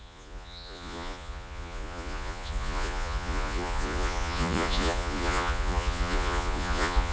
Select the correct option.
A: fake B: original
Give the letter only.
A